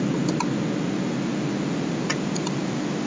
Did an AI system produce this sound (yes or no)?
no